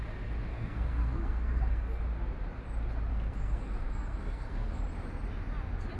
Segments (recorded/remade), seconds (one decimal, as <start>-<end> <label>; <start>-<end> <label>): 0.0-0.5 recorded; 0.5-2.0 remade; 2.0-3.1 recorded; 3.1-4.8 remade; 4.8-6.0 recorded